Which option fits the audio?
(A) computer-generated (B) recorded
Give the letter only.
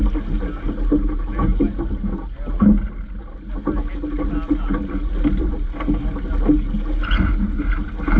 B